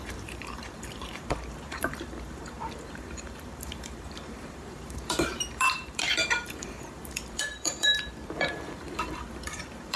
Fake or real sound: fake